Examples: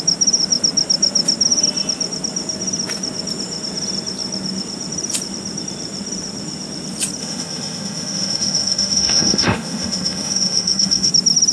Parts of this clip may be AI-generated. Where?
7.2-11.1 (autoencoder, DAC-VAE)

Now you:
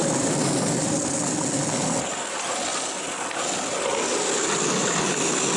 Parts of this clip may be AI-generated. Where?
none

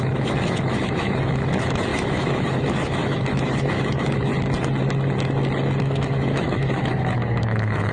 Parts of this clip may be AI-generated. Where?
0.0-4.3 (autoencoder, DAC-VAE); 5.8-7.9

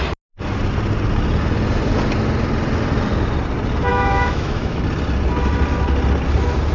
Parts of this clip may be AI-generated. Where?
3.9-4.8 (autoencoder, DAC-VAE)